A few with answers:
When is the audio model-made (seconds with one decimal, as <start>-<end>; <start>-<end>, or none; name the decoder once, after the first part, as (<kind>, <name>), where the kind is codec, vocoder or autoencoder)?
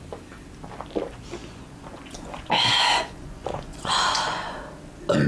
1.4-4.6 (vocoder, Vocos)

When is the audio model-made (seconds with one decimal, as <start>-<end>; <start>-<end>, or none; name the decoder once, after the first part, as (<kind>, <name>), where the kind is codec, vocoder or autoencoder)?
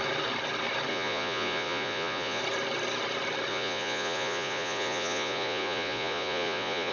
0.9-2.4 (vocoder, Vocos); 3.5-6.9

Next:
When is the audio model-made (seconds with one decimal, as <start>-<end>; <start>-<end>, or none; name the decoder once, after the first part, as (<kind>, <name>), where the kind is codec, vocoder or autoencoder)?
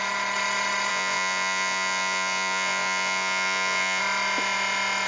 0.9-4.0 (vocoder, Vocos)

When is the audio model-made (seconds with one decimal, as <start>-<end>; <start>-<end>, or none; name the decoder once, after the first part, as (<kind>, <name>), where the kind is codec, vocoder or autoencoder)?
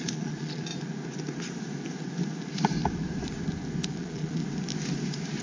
0.0-0.7 (vocoder, Vocos); 3.9-4.4